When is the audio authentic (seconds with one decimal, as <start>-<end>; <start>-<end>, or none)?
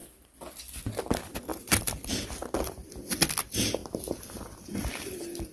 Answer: 0.0-5.5